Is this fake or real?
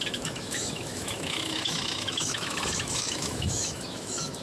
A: fake